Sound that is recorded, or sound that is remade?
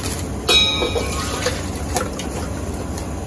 recorded